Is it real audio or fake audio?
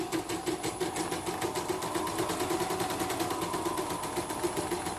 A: real